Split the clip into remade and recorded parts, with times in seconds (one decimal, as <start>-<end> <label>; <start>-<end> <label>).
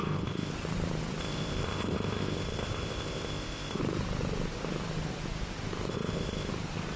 0.0-0.5 remade; 0.5-1.2 recorded; 1.2-3.8 remade; 3.8-5.9 recorded; 5.9-6.5 remade; 6.5-7.0 recorded